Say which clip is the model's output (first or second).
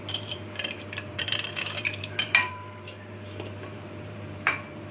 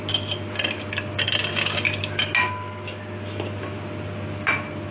first